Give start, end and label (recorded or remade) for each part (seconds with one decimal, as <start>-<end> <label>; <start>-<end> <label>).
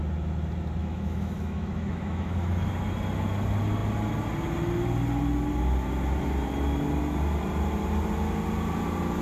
0.0-0.8 recorded; 0.8-2.7 remade; 2.7-9.2 recorded